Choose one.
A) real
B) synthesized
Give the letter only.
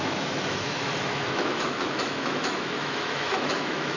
B